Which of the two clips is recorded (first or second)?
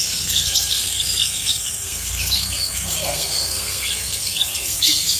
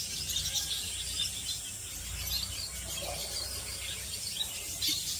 second